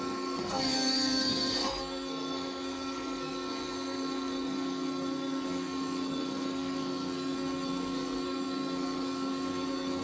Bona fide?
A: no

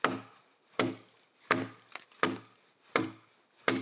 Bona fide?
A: yes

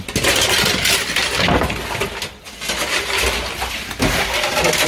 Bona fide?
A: yes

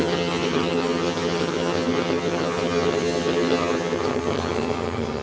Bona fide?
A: no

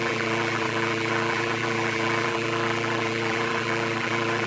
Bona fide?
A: no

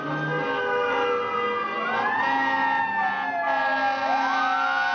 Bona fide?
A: yes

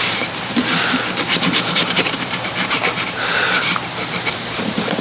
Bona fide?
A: no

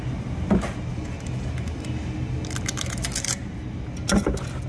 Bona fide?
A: yes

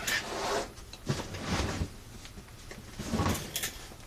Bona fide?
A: yes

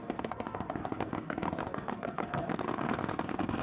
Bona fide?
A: no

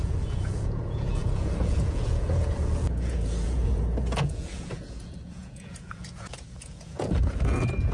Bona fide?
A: no